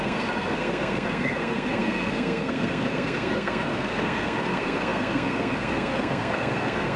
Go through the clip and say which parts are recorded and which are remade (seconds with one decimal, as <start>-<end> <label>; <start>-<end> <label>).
0.0-7.0 remade